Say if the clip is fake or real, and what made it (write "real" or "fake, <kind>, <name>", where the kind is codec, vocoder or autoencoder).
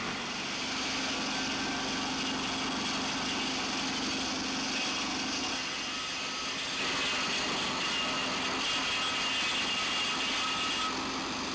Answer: real